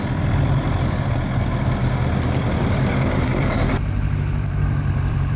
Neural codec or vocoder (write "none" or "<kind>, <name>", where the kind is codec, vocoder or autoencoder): vocoder, BigVGAN v2